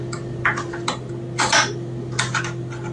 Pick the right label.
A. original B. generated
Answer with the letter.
A